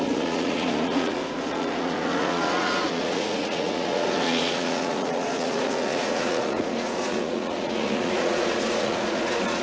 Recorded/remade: remade